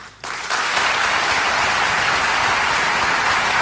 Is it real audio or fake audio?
real